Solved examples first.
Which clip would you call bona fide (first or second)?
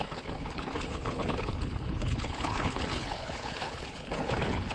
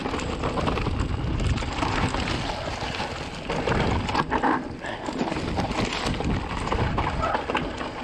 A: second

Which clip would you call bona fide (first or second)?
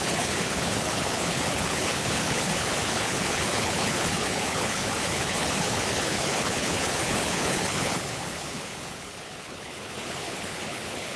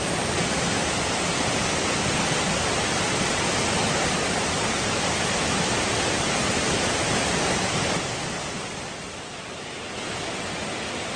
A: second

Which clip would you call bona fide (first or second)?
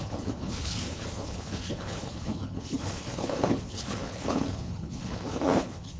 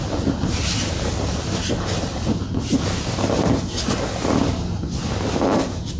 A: second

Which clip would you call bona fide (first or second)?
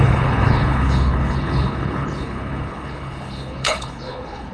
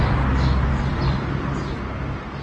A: second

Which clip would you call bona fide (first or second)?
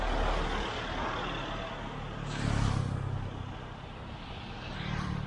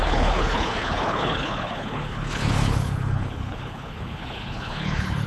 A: first